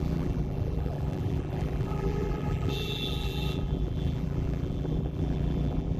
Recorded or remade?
remade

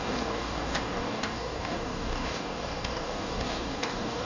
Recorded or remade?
remade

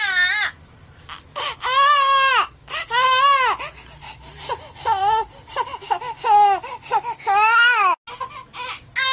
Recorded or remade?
recorded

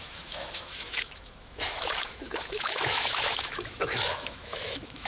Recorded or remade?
remade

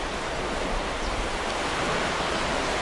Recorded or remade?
recorded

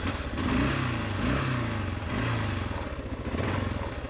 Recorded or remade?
recorded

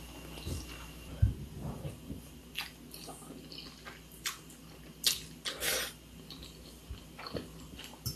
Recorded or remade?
recorded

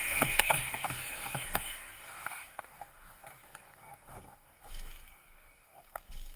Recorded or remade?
remade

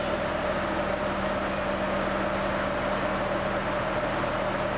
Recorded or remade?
recorded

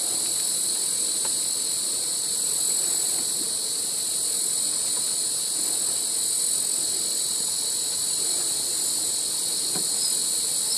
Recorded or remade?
recorded